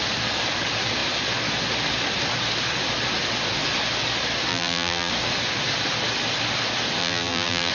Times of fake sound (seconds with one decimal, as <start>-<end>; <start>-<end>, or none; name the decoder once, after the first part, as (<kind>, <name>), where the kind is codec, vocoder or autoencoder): 4.5-5.1 (vocoder, BigVGAN v2); 7.0-7.7